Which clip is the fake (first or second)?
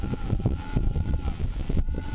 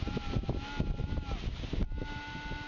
first